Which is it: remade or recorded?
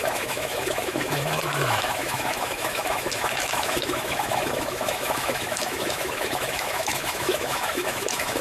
remade